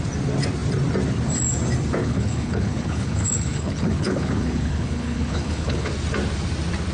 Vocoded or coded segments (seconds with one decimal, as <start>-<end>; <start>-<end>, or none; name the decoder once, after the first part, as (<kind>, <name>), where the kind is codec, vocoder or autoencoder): 2.0-5.9 (codec, HILCodec)